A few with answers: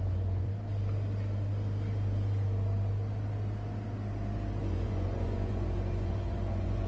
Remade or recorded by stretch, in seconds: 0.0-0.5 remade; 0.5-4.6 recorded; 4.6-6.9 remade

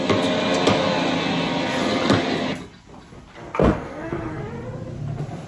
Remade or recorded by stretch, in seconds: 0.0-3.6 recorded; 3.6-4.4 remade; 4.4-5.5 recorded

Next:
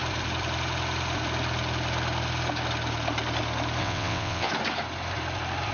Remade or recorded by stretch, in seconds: 0.0-3.8 recorded; 3.8-4.5 remade; 4.5-5.7 recorded